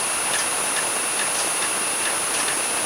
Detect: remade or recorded recorded